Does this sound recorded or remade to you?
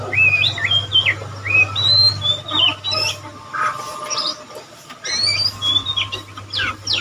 recorded